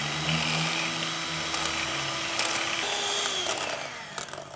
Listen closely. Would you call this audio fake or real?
real